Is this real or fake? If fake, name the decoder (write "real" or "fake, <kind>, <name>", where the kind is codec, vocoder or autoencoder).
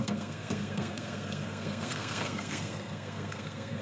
fake, codec, SNAC